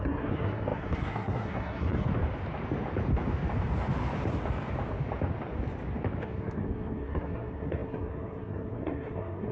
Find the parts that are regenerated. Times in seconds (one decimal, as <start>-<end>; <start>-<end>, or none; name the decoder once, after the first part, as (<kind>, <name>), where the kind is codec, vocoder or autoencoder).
0.0-2.1 (codec, SNAC); 6.2-9.5